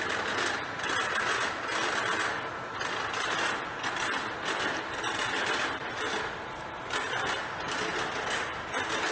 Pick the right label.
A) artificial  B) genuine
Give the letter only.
B